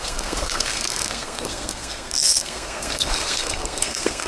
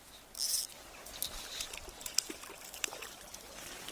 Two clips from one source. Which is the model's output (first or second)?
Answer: first